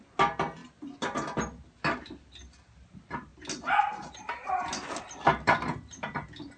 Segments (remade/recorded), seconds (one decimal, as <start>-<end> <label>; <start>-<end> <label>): 0.0-6.6 recorded